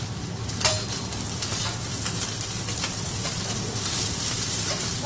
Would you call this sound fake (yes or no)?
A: yes